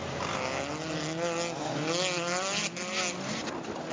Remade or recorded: recorded